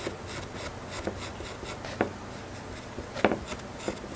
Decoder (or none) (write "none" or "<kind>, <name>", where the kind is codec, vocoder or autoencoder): none